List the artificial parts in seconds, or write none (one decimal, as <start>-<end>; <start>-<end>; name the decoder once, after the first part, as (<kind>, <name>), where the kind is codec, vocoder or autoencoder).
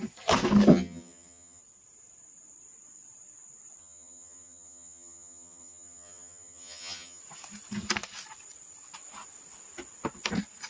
0.7-1.6 (vocoder, HiFi-GAN); 3.8-7.2